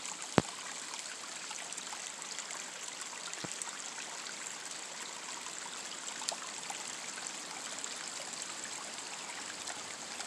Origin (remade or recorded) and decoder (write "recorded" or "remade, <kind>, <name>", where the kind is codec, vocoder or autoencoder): recorded